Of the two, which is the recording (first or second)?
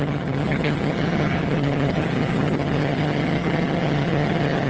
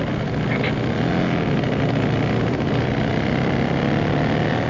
second